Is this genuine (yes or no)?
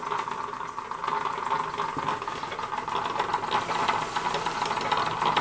yes